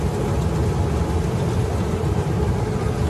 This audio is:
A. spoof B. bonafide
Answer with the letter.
B